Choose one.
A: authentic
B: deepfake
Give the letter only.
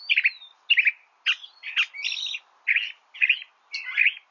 A